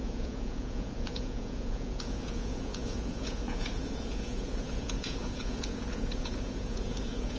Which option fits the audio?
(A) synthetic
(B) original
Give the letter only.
A